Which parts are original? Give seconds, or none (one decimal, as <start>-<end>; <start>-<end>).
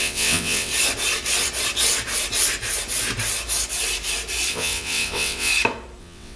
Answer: 0.7-4.5; 5.5-6.0